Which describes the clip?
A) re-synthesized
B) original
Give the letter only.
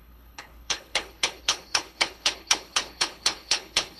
A